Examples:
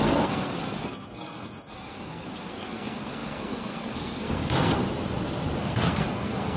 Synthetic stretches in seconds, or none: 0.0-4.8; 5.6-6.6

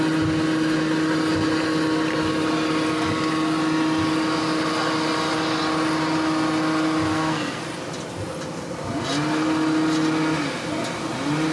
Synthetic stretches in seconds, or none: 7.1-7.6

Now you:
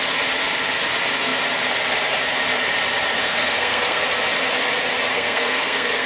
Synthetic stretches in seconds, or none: 3.2-4.0; 5.1-6.1

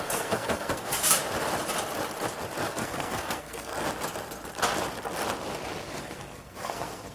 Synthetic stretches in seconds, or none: 0.0-1.2; 2.7-3.7; 6.0-7.1

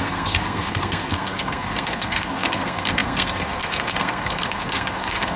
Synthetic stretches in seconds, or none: 0.0-5.4